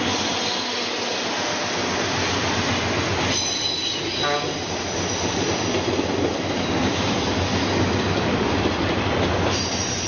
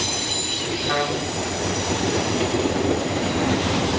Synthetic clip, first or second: second